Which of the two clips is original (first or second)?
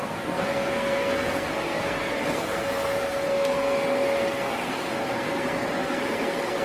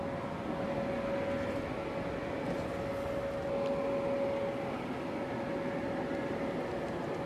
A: second